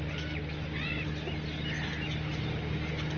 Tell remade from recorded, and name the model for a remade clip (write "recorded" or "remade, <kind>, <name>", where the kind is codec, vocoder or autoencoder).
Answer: recorded